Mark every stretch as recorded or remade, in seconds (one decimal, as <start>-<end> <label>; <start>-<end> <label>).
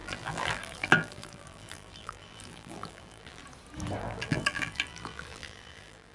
0.0-3.4 remade; 3.4-4.0 recorded; 4.0-6.1 remade